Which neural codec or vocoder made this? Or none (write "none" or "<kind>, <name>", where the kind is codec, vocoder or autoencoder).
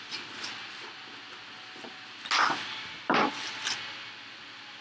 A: none